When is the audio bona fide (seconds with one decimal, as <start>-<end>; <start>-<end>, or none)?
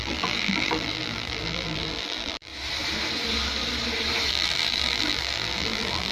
2.5-4.3